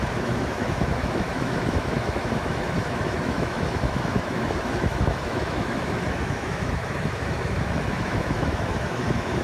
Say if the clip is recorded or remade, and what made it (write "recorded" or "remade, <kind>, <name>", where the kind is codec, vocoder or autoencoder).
remade, autoencoder, DAC-VAE